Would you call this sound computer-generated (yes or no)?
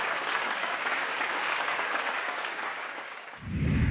yes